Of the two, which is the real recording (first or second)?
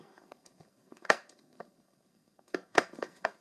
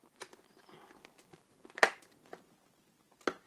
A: second